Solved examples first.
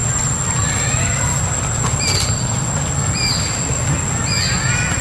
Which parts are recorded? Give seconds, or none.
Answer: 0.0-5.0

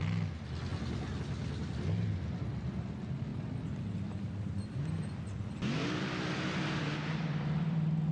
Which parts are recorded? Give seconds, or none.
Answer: 0.0-3.3

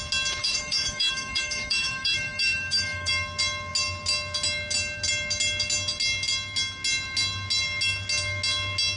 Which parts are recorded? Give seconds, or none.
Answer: 0.0-0.4; 3.1-9.0

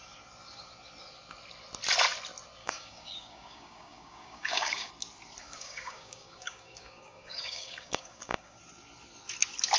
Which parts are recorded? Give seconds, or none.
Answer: 0.0-2.6; 4.9-5.4; 8.6-9.8

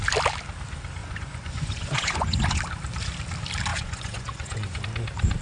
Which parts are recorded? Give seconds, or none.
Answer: 0.0-1.0; 2.6-3.7; 4.8-5.4